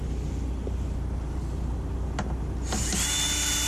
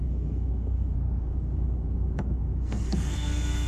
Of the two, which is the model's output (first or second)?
second